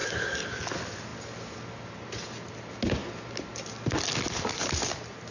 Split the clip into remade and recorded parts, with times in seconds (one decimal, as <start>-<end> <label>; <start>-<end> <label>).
0.0-5.3 recorded